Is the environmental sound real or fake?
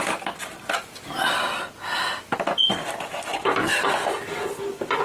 real